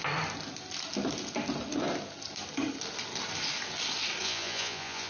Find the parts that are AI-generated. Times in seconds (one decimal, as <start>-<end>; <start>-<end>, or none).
4.2-5.1